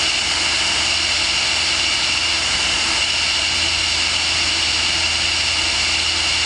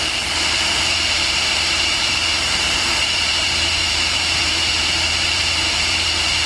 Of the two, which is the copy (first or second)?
second